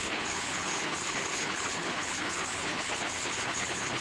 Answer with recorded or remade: remade